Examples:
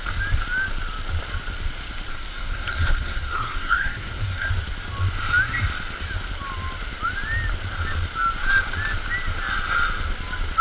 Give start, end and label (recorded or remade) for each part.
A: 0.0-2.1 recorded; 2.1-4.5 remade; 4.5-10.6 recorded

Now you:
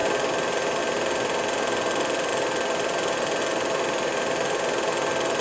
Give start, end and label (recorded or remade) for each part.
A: 0.0-5.4 recorded

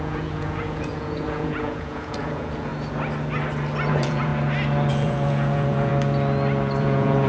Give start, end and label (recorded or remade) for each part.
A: 0.0-2.7 remade; 2.7-3.9 recorded; 3.9-4.3 remade; 4.3-4.9 recorded; 4.9-5.9 remade; 5.9-6.8 recorded; 6.8-7.3 remade